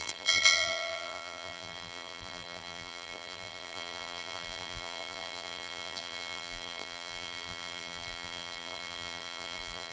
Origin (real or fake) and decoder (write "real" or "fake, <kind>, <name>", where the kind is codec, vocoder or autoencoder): fake, vocoder, BigVGAN v2